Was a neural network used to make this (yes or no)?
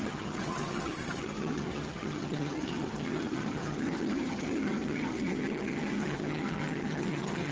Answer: yes